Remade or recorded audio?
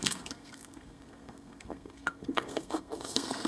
remade